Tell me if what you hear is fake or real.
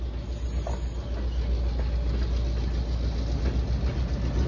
real